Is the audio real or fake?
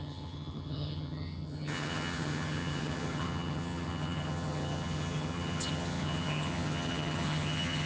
fake